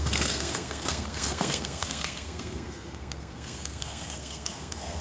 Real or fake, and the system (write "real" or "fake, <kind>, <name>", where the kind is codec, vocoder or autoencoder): fake, codec, SNAC